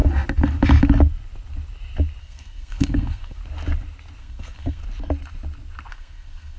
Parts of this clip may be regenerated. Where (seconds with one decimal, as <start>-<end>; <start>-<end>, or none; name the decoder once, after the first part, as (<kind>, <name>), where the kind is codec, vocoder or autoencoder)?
2.2-3.4 (codec, SNAC); 4.2-4.8; 5.9-6.6